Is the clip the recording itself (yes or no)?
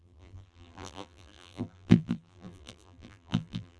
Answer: no